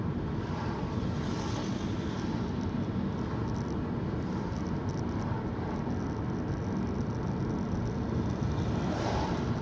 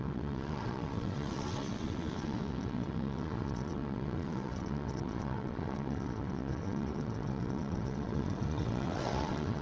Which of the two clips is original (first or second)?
first